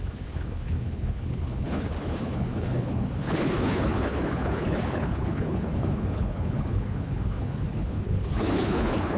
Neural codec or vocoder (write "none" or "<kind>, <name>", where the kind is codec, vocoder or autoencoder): codec, HILCodec